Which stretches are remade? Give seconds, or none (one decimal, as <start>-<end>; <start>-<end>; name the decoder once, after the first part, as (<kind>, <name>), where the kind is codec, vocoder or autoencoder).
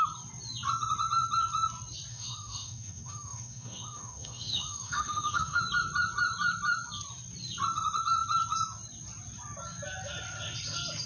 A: 2.1-5.6 (autoencoder, DAC-VAE)